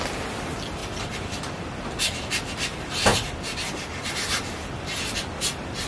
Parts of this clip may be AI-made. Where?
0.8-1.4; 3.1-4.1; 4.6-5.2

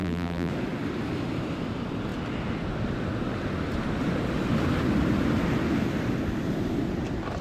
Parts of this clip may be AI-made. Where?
0.0-0.5

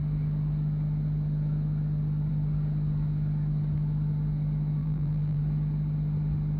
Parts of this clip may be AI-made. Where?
4.8-5.4

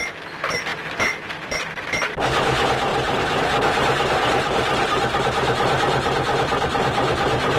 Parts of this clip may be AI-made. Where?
2.9-7.6

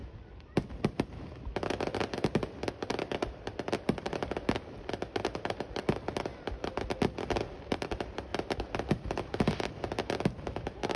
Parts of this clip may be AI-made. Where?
0.0-6.3; 7.6-8.3; 8.9-11.0